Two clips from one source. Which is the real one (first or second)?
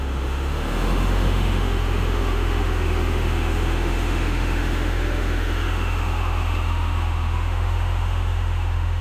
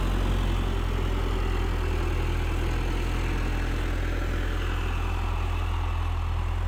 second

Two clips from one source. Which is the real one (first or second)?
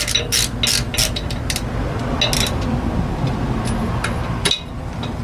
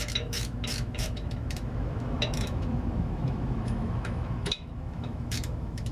first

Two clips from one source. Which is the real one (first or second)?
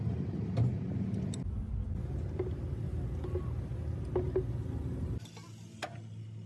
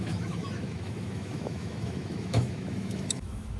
first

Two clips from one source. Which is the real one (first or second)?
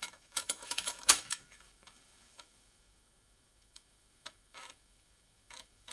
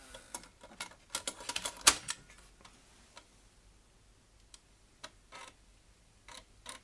second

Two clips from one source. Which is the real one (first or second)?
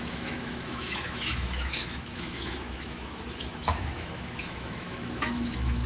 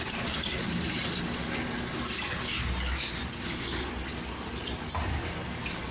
second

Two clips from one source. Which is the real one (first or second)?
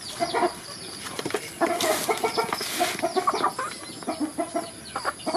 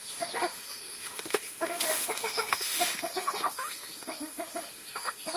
first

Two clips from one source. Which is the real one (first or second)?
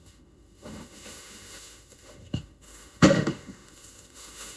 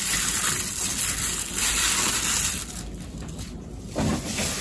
second